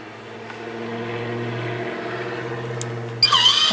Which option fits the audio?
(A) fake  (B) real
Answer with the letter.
B